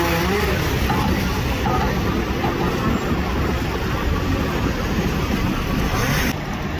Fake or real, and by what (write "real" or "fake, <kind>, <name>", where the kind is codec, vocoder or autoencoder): real